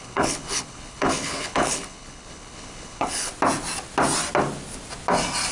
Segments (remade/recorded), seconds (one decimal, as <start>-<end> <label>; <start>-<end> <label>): 0.0-3.3 remade; 3.3-5.5 recorded